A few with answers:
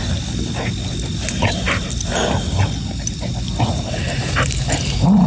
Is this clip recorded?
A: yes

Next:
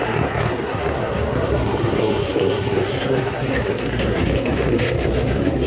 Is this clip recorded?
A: no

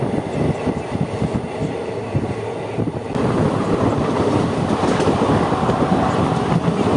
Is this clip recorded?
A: yes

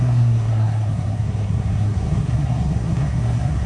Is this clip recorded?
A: no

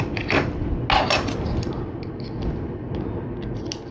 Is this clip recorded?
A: yes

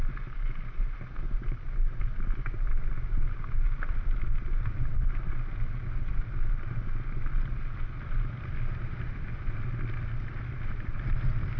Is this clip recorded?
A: yes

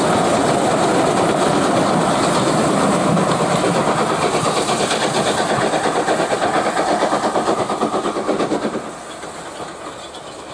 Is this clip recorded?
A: yes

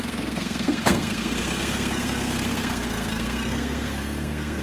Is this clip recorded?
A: no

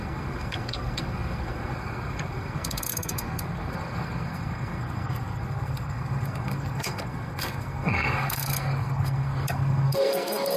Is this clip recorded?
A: no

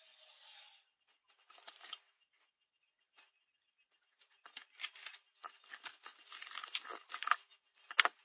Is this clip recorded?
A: yes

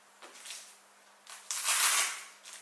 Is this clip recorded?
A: yes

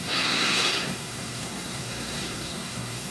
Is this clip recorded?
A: no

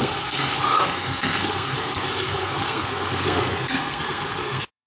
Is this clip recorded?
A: no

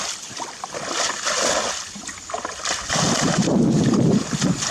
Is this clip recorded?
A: yes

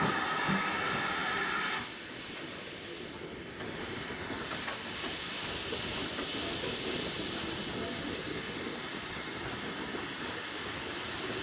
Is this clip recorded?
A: yes